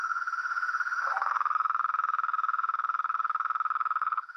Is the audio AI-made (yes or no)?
yes